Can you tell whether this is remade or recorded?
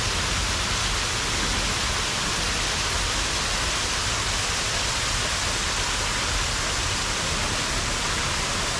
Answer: recorded